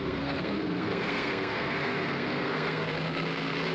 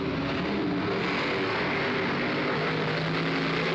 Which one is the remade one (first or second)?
first